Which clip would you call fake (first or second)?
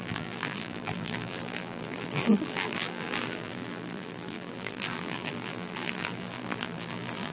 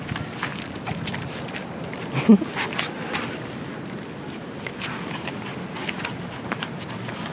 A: first